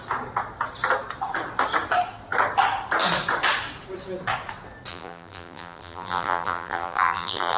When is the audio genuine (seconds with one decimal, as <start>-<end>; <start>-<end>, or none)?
0.0-4.9